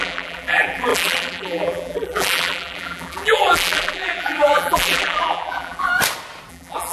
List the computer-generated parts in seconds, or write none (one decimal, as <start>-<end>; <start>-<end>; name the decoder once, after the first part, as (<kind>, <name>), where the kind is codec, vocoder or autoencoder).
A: 0.0-5.9 (vocoder, BigVGAN v2); 6.5-6.9